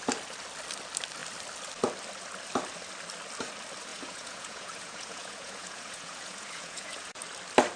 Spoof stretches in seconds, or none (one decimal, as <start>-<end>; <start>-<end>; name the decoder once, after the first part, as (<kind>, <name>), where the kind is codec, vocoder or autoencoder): 3.9-7.2 (vocoder, Vocos)